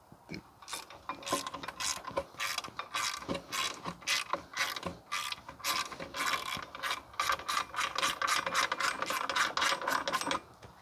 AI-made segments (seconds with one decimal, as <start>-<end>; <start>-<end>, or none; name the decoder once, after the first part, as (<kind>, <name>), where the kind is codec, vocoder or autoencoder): none